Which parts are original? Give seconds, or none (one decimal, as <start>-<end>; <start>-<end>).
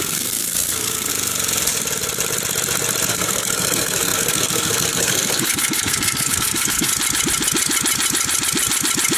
1.1-3.1; 6.9-9.2